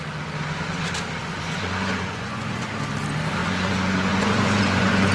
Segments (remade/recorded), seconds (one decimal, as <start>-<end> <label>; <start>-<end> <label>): 0.0-1.2 recorded; 1.2-2.7 remade; 2.7-3.4 recorded; 3.4-5.1 remade